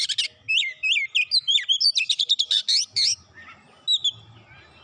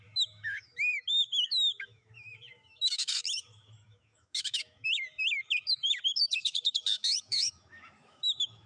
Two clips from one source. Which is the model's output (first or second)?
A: second